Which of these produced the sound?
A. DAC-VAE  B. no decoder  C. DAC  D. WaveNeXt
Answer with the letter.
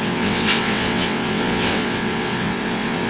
D